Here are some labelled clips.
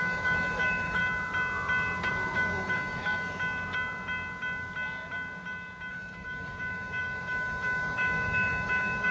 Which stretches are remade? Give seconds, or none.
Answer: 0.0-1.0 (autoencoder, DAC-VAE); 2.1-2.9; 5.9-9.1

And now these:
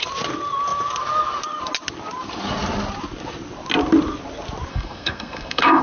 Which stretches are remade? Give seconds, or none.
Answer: 4.7-5.8 (codec, SNAC)

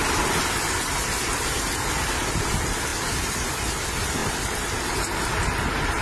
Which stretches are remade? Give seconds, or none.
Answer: 0.0-2.2 (vocoder, BigVGAN v2); 2.9-3.5; 4.2-4.9

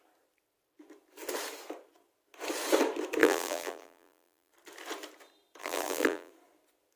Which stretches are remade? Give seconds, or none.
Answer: 3.2-4.5 (vocoder, BigVGAN v2); 5.6-6.3

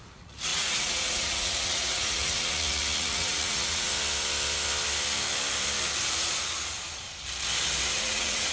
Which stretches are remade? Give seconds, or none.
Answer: 0.0-3.9 (vocoder, Vocos); 8.0-8.5

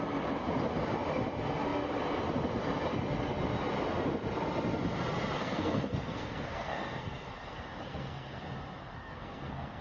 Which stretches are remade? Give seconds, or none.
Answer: 5.4-8.4 (codec, SNAC); 8.8-9.8

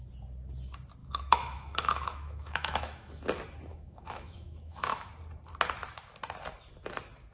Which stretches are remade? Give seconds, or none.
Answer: 1.0-3.2 (autoencoder, DAC-VAE); 3.7-5.1

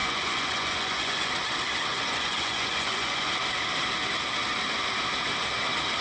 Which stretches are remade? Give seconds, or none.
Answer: 0.0-1.3 (vocoder, Vocos); 1.9-3.3